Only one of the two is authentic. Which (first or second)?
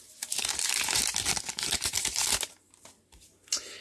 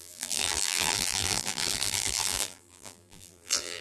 first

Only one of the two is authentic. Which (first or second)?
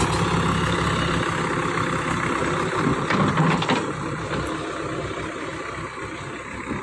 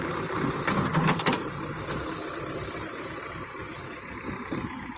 first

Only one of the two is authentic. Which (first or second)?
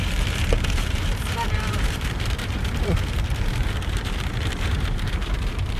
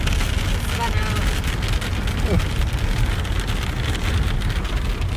second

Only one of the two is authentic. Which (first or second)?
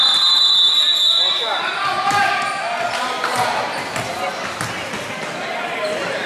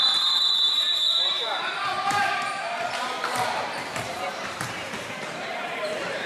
first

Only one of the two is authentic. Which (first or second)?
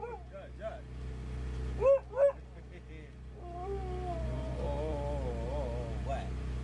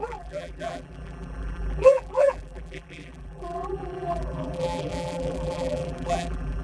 first